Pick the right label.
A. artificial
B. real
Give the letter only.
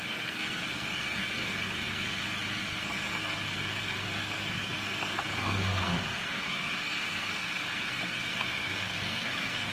A